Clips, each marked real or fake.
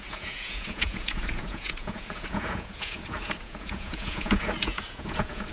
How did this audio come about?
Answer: fake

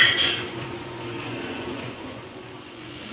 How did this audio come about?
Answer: fake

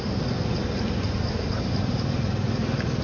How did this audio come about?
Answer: real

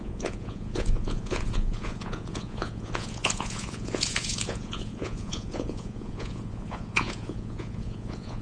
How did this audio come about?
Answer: fake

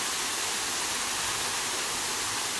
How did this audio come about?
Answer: real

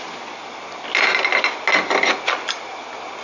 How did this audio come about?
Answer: real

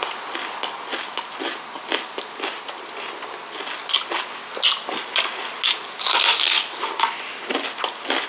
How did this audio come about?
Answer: real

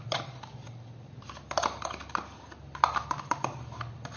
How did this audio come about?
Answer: real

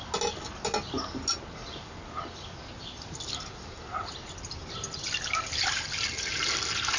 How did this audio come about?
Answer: real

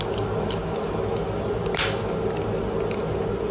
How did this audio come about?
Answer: real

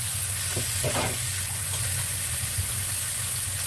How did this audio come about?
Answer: fake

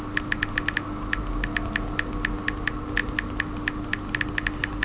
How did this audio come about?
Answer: real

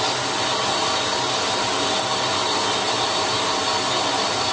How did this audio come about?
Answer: real